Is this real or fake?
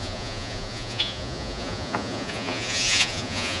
fake